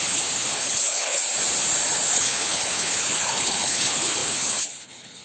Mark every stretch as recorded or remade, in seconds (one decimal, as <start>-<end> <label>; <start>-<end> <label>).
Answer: 0.0-1.2 remade; 1.2-2.1 recorded; 2.1-5.2 remade